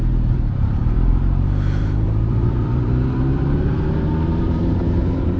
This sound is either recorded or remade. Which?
remade